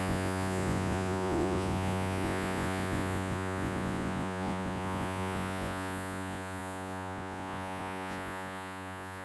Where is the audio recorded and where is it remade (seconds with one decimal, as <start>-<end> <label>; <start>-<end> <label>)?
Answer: 0.0-9.2 remade